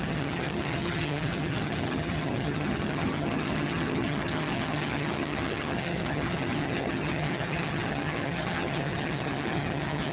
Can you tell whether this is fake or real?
fake